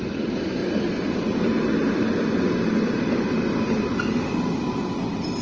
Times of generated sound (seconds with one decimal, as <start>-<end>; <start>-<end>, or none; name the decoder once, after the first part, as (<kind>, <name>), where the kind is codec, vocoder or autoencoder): none